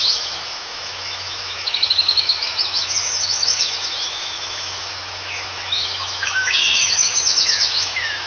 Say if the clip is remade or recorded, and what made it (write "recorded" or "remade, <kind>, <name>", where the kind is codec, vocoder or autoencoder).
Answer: remade, autoencoder, DAC-VAE